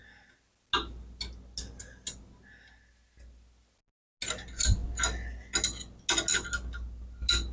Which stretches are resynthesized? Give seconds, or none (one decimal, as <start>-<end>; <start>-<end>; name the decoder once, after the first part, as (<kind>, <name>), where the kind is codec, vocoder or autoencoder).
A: none